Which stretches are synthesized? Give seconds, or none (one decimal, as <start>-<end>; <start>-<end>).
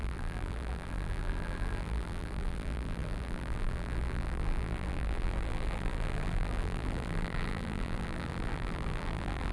0.0-9.5